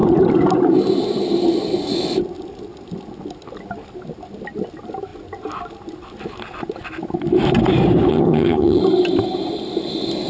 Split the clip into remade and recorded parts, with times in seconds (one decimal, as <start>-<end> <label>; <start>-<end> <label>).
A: 0.0-8.1 recorded; 8.1-8.8 remade; 8.8-10.3 recorded